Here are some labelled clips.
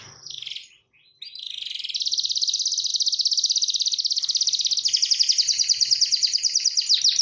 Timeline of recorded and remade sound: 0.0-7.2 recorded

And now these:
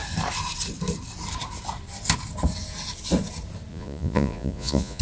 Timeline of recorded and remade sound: 0.0-3.7 recorded; 3.7-5.0 remade

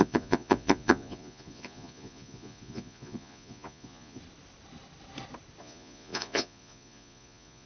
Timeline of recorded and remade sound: 0.0-4.2 remade; 4.2-5.6 recorded; 5.6-7.7 remade

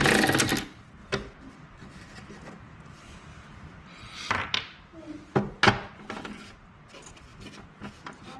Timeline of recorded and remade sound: 0.0-8.4 recorded

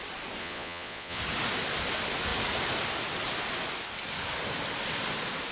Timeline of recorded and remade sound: 0.0-0.4 recorded; 0.4-1.2 remade; 1.2-5.5 recorded

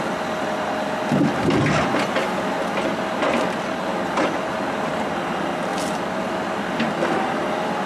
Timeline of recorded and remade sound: 0.0-7.9 recorded

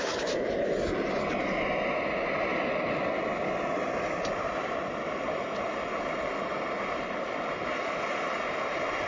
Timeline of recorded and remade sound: 0.0-9.1 recorded

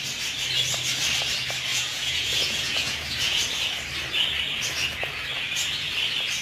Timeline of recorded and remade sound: 0.0-1.7 recorded; 1.7-3.4 remade; 3.4-6.4 recorded